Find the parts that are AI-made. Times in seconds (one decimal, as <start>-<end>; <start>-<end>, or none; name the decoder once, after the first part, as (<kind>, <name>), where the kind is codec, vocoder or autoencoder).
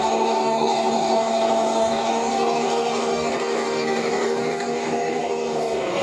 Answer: 0.0-6.0 (codec, DAC)